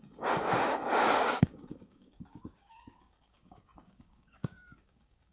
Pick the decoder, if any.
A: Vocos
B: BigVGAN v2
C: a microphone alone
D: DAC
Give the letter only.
D